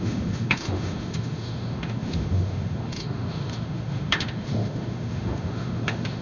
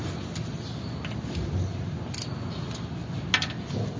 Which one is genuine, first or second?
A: second